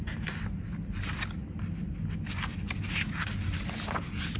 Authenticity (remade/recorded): recorded